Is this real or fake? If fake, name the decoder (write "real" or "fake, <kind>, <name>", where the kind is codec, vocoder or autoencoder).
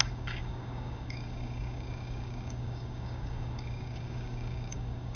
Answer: fake, codec, DAC